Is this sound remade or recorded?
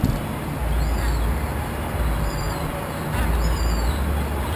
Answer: recorded